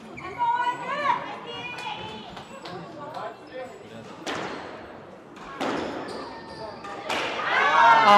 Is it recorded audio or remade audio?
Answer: recorded